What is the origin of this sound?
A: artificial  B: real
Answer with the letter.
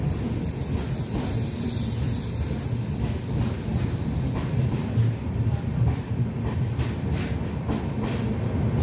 B